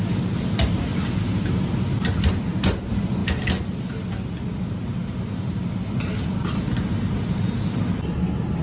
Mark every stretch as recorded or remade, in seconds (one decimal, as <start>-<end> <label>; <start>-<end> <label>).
0.0-8.6 recorded